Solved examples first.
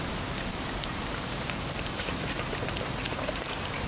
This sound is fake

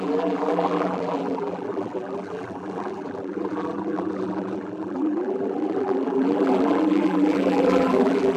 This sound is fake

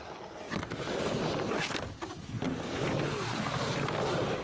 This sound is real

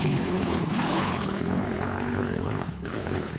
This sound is fake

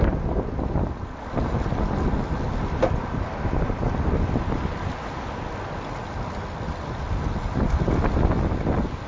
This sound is real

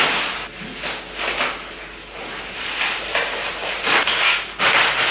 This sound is real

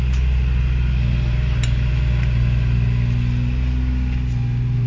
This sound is real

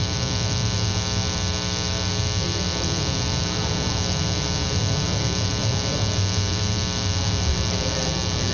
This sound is real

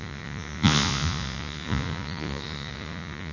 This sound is fake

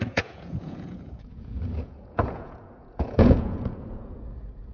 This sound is fake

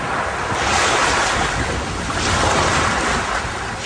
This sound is real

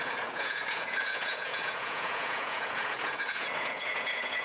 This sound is fake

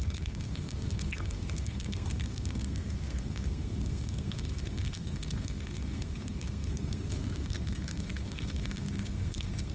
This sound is fake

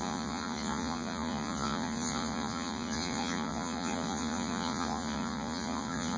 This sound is fake